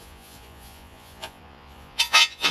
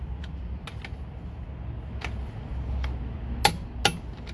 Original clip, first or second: second